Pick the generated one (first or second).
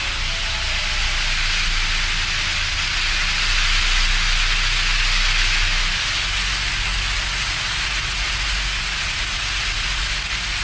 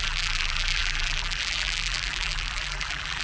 second